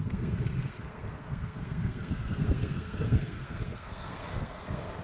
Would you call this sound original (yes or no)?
no